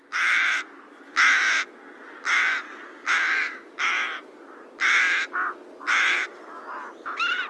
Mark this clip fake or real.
real